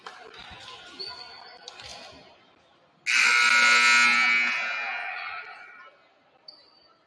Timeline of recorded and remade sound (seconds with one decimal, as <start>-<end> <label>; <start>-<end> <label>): 0.0-5.0 recorded; 5.0-5.8 remade; 5.8-7.1 recorded